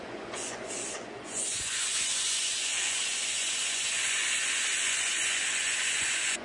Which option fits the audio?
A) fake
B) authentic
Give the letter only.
A